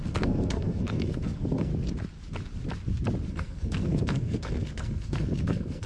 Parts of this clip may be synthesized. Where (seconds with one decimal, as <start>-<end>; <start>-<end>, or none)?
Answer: 0.0-1.7; 3.3-5.9